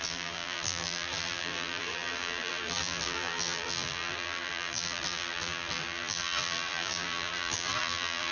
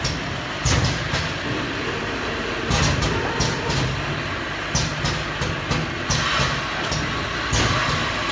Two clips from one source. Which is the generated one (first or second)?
first